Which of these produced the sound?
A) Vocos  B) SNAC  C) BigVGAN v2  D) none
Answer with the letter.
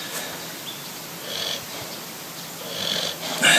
D